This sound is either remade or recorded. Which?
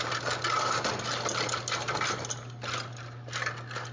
recorded